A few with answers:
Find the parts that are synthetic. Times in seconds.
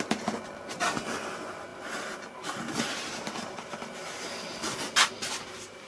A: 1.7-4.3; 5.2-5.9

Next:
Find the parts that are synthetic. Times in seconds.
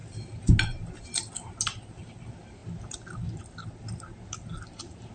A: none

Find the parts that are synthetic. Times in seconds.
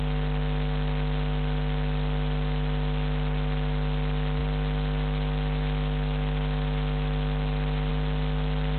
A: none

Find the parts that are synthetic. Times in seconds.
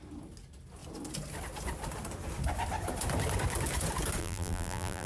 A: 4.2-5.1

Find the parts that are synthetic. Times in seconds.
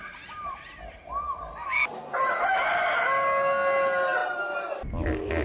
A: 0.0-1.1; 4.2-4.9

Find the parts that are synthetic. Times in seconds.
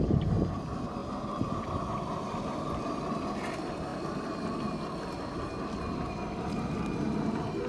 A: 1.0-2.8